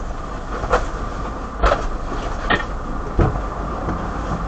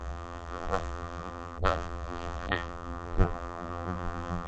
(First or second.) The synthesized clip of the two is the second